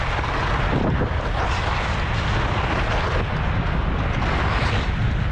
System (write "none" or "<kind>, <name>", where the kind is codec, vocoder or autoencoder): none